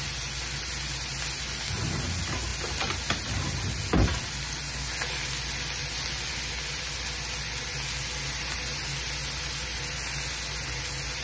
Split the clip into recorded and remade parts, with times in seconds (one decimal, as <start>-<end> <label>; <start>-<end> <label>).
0.0-11.2 recorded